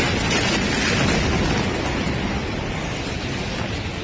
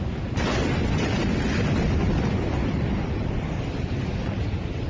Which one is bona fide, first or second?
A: first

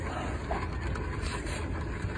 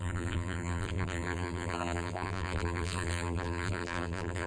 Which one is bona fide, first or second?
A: first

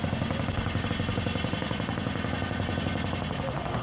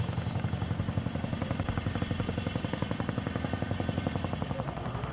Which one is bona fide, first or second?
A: first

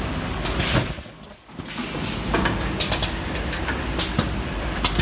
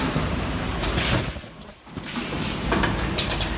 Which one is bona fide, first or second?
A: first